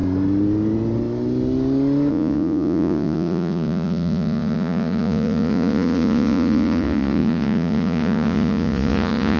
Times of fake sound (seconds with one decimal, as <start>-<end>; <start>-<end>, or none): 2.1-9.4